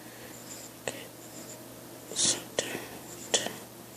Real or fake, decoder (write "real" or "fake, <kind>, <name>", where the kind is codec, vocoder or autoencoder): real